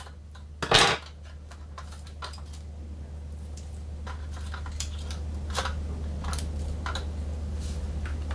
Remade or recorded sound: recorded